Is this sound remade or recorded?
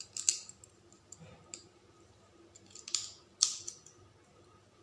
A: recorded